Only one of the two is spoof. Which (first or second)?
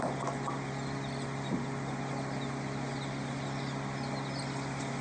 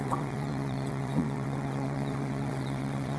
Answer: second